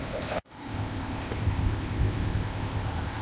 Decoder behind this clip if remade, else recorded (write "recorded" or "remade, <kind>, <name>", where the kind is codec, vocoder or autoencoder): remade, codec, ZipCodec